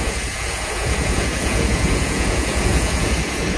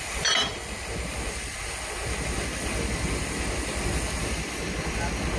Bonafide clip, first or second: second